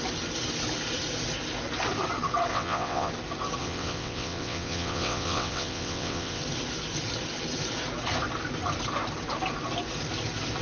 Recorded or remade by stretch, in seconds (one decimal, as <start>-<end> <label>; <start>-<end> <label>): 0.0-2.5 recorded; 2.5-3.1 remade; 3.1-3.6 recorded; 3.6-6.4 remade; 6.4-10.6 recorded